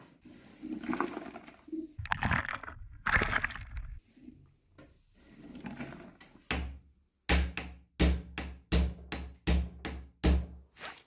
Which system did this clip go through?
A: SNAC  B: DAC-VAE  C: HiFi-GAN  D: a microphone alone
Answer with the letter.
D